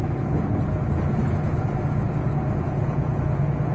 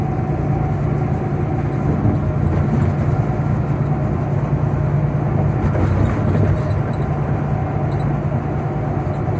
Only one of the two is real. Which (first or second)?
second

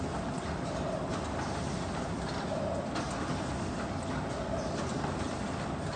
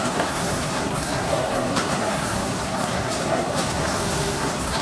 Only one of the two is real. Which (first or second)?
first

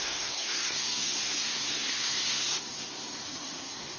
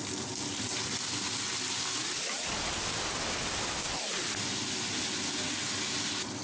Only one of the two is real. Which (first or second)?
second